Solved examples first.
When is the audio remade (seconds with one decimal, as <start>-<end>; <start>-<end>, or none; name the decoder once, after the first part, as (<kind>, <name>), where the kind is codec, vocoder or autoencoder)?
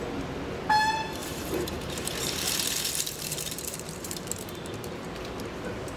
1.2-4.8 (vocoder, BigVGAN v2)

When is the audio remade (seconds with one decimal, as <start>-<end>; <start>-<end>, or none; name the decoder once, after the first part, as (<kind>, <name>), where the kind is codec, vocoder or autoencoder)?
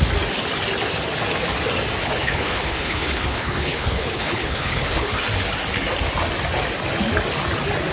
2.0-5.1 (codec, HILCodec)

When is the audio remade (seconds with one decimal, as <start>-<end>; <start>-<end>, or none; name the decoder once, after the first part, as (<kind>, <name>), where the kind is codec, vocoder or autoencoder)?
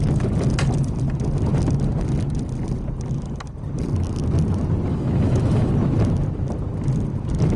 4.9-5.7 (autoencoder, DAC-VAE)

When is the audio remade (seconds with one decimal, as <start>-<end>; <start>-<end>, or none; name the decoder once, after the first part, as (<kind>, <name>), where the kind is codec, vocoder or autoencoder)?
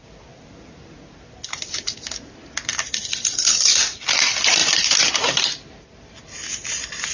2.7-3.7 (vocoder, BigVGAN v2); 4.6-5.4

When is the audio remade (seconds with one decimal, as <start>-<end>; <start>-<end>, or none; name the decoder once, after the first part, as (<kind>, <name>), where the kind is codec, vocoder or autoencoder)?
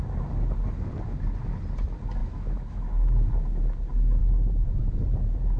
2.2-2.9 (autoencoder, DAC-VAE)